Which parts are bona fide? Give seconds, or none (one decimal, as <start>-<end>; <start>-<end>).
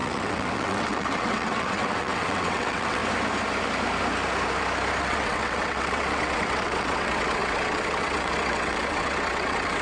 3.0-5.0